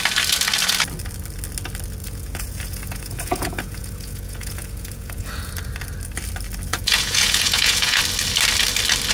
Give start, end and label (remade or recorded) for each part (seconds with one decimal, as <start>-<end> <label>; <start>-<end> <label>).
0.0-2.0 recorded; 2.0-5.5 remade; 5.5-6.7 recorded; 6.7-8.0 remade; 8.0-9.1 recorded

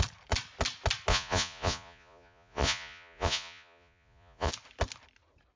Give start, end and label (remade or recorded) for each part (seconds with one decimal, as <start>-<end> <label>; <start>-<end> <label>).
0.0-1.1 recorded; 1.1-4.5 remade; 4.5-5.6 recorded

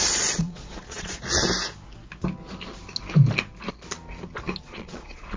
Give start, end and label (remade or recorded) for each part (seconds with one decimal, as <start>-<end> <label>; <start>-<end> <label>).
0.0-1.4 remade; 1.4-4.6 recorded; 4.6-5.4 remade

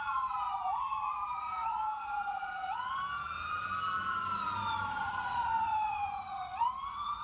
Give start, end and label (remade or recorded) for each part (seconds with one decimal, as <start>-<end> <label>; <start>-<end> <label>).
0.0-3.0 remade; 3.0-4.9 recorded; 4.9-7.2 remade

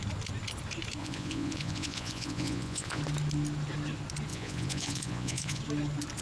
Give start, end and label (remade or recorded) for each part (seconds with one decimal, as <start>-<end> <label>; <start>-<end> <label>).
0.0-1.0 recorded; 1.0-3.0 remade; 3.0-4.3 recorded; 4.3-5.6 remade; 5.6-6.2 recorded

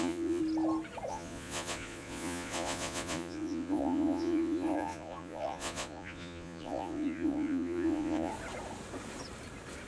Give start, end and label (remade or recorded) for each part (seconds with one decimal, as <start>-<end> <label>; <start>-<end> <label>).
0.0-0.4 remade; 0.4-1.1 recorded; 1.1-8.3 remade; 8.3-9.9 recorded

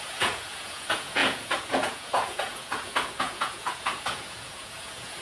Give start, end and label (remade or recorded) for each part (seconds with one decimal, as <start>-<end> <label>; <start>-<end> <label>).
0.0-5.2 remade

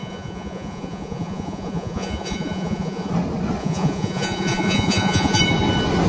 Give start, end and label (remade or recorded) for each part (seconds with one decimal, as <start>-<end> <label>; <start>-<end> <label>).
0.0-3.1 remade; 3.1-3.6 recorded; 3.6-5.4 remade; 5.4-6.1 recorded